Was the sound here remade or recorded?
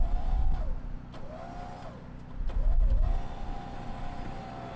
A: recorded